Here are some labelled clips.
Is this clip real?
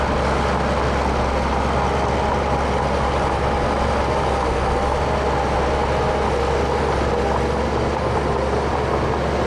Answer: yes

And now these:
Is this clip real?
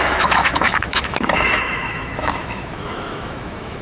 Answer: no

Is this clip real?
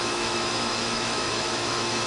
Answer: no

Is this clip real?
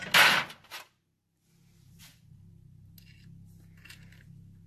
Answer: yes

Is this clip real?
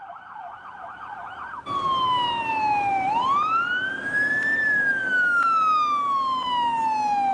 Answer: yes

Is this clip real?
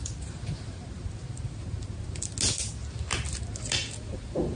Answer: yes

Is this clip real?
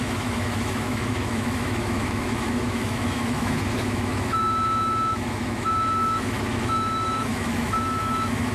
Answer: no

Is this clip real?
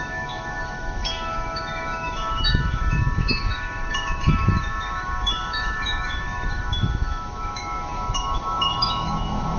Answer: no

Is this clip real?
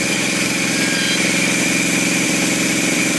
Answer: yes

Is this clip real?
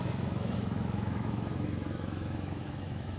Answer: no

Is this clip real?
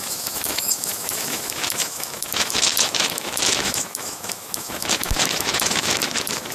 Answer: no